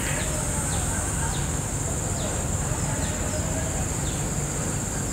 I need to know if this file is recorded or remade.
recorded